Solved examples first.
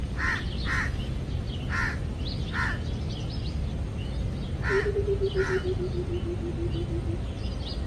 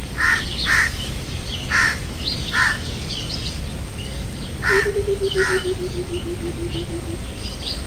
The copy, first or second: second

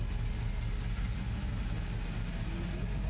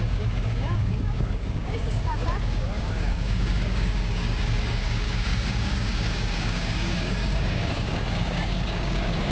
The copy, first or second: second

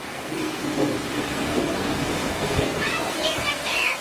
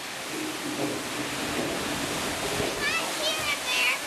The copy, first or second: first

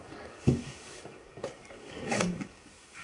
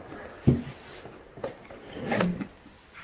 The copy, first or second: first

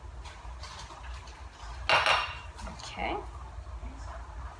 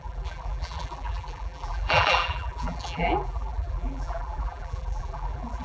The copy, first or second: second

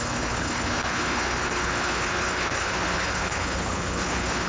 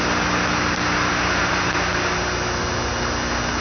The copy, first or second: first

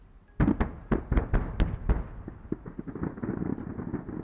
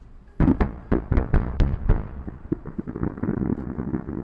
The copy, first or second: second